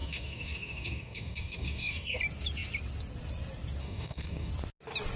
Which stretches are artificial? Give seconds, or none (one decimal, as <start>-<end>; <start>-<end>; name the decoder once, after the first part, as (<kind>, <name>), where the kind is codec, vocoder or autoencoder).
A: 0.0-2.2 (codec, DAC); 3.8-4.5